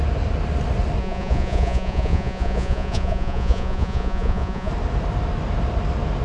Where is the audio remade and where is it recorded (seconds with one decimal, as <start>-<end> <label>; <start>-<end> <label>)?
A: 0.0-1.0 recorded; 1.0-4.7 remade; 4.7-6.2 recorded